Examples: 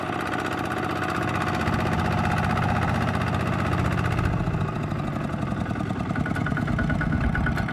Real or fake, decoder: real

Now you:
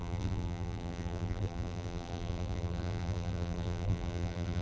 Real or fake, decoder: fake, vocoder, BigVGAN v2